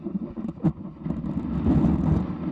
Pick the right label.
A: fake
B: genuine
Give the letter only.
B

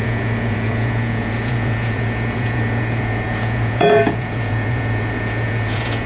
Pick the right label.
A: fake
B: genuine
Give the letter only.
A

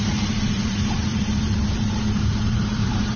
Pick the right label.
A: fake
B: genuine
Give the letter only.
A